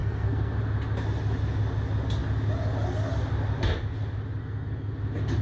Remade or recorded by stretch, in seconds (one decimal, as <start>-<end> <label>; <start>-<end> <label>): 0.0-0.6 remade; 0.6-4.4 recorded; 4.4-4.9 remade; 4.9-5.4 recorded